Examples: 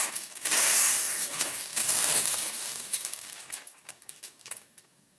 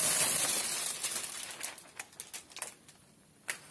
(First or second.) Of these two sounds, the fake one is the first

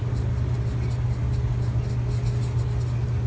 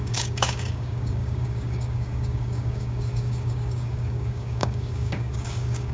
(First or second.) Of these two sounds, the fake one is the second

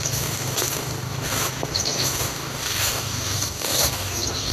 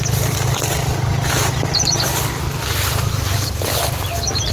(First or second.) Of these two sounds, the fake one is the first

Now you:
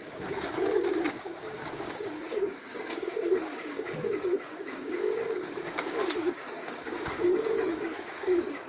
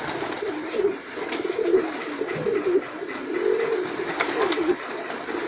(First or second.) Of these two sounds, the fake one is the first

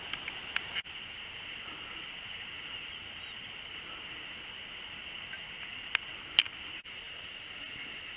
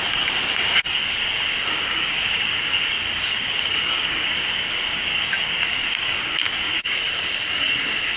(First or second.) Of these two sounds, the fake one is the second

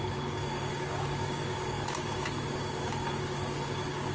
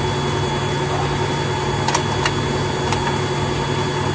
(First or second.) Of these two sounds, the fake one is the first